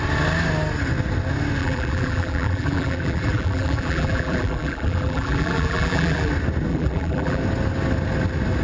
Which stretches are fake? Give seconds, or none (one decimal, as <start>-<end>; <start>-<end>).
1.6-6.3; 6.7-7.4